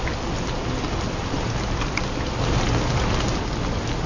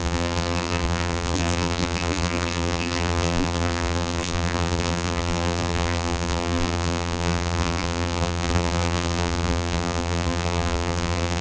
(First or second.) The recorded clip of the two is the first